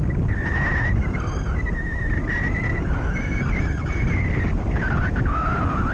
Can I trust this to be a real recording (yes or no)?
yes